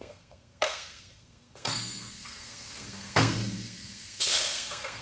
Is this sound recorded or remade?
remade